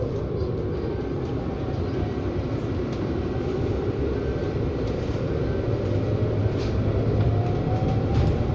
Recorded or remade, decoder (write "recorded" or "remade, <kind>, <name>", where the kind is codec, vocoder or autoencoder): recorded